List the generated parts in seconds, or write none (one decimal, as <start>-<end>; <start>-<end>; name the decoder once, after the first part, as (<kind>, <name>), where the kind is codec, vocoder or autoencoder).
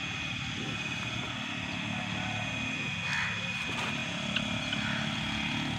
none